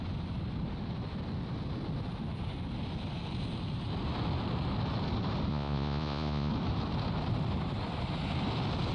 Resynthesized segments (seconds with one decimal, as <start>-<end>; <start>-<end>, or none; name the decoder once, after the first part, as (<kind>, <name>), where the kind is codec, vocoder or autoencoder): 5.5-6.5 (vocoder, Vocos)